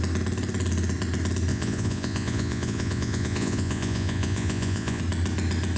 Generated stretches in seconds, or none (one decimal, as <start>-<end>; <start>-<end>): 1.5-5.0